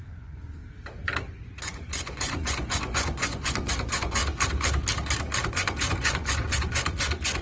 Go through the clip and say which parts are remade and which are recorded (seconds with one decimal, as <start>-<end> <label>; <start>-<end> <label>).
0.0-0.6 remade; 0.6-1.6 recorded; 1.6-4.2 remade; 4.2-5.5 recorded; 5.5-7.4 remade